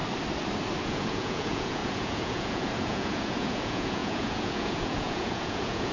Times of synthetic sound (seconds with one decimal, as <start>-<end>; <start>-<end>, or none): 0.8-5.9